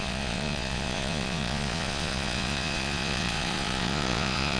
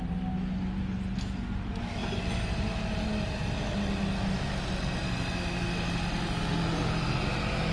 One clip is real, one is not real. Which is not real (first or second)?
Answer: first